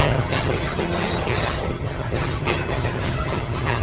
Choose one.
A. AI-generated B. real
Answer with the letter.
A